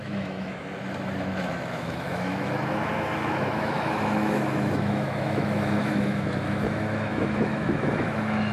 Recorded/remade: remade